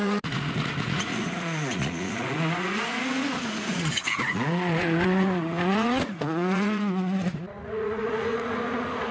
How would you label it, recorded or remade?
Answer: remade